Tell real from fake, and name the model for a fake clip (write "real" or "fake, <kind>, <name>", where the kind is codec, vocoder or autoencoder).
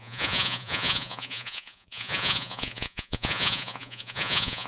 fake, vocoder, Vocos